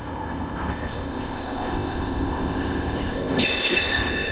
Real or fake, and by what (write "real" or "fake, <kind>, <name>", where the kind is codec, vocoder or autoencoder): fake, codec, ZipCodec